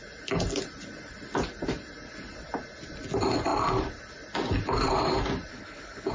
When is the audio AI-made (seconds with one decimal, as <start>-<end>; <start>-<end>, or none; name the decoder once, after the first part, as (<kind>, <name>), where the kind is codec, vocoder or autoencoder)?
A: 5.5-6.1 (codec, HILCodec)